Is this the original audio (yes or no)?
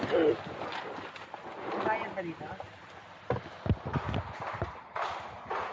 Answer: yes